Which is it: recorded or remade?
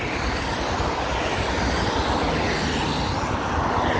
recorded